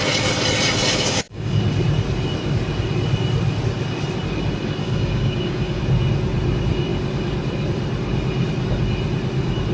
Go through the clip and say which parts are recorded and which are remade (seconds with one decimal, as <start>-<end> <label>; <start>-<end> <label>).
0.0-0.9 recorded; 0.9-1.6 remade; 1.6-4.8 recorded; 4.8-5.8 remade; 5.8-9.7 recorded